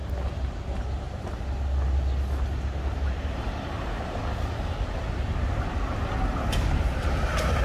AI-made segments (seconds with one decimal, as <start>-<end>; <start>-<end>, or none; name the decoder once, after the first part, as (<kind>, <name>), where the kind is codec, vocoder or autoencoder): 2.9-4.2 (vocoder, BigVGAN v2); 6.3-7.6